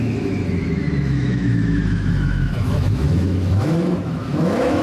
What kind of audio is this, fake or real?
fake